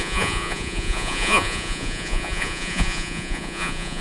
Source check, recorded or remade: remade